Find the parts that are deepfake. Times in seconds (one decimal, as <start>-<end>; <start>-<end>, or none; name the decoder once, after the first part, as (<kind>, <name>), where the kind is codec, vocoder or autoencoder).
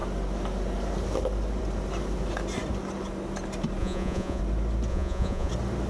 3.8-4.4 (vocoder, Vocos); 4.9-5.5